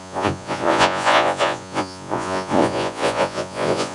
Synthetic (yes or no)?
yes